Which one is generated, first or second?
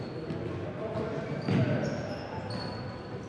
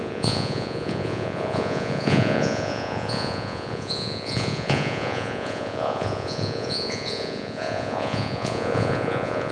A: second